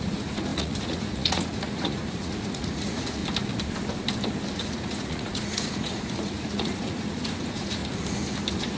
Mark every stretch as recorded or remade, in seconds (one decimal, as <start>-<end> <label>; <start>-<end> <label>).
0.0-3.2 remade; 3.2-4.6 recorded; 4.6-7.8 remade; 7.8-8.8 recorded